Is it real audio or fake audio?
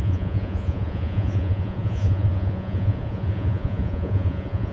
fake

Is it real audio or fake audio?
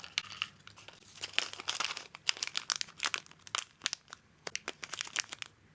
real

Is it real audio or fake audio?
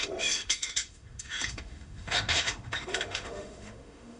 fake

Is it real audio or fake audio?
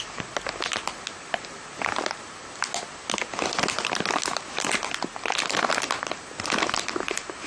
real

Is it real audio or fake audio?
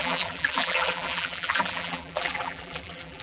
fake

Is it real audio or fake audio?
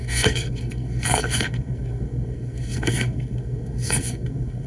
fake